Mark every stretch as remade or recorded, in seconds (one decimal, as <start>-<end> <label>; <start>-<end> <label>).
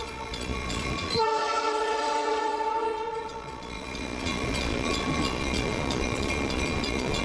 0.0-7.2 remade